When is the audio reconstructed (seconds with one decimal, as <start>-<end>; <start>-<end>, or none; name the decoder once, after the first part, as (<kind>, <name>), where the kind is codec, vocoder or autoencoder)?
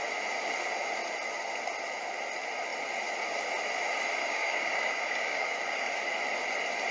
4.2-5.9 (codec, DAC)